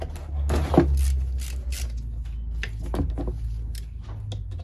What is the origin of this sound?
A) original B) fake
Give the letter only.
A